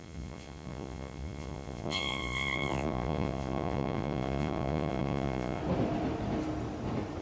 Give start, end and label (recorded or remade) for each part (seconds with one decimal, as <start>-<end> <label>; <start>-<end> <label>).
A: 0.0-5.6 remade; 5.6-7.2 recorded